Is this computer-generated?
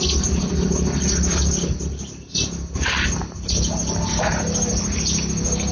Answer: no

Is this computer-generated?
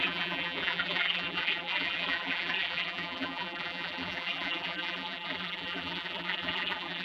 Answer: yes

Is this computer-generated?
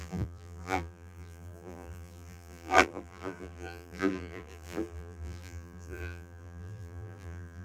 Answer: yes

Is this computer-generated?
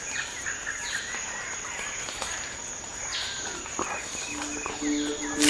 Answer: no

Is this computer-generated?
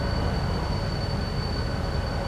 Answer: no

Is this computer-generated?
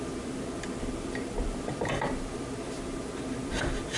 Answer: yes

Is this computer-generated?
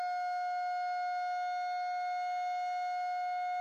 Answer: no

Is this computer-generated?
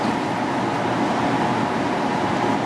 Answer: no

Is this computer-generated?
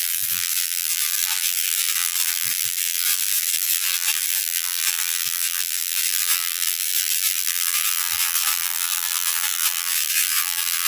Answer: yes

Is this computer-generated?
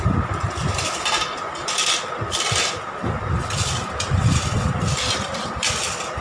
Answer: yes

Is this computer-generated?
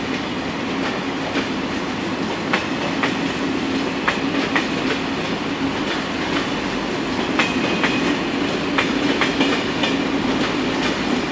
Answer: no